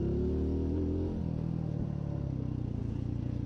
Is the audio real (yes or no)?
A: yes